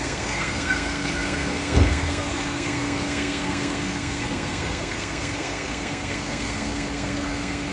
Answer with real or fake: fake